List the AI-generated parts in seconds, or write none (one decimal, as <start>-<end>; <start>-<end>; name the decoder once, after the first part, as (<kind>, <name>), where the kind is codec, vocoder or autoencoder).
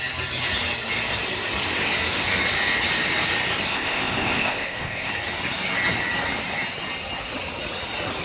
3.7-5.1 (codec, ZipCodec)